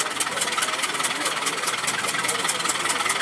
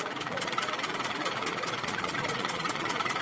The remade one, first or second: second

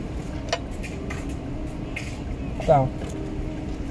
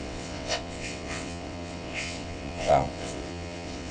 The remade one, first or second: second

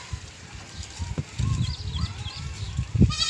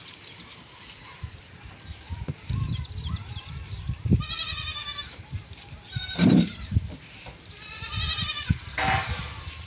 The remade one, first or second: second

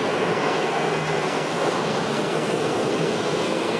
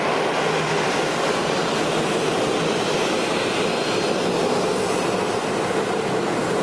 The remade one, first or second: first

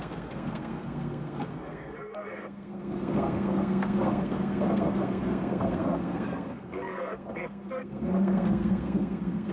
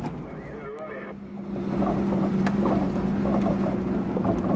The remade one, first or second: first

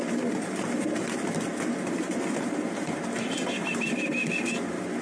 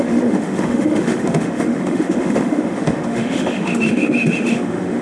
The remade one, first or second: second